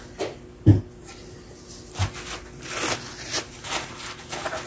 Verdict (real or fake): real